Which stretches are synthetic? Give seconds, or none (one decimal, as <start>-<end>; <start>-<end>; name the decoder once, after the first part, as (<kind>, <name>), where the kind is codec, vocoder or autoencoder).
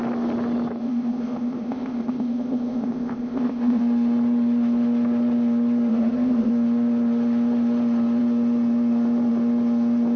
0.8-3.8 (codec, ZipCodec); 5.9-6.5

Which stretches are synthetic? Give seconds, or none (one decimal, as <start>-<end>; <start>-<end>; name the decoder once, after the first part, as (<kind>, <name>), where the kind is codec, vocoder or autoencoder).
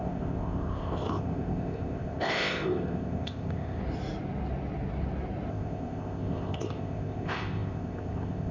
0.0-3.8 (codec, ZipCodec); 5.5-8.5